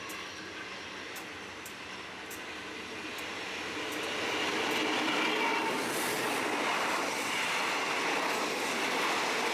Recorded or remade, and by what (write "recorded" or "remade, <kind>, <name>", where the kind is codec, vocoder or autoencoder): recorded